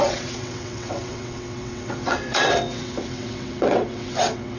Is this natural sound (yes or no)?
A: no